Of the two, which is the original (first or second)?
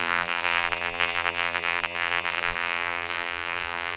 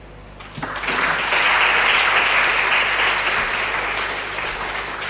second